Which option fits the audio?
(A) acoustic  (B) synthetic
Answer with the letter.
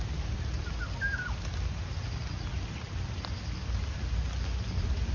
A